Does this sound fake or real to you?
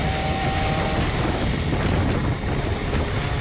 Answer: real